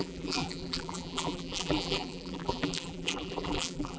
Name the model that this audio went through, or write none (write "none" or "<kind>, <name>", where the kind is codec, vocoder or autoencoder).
vocoder, BigVGAN v2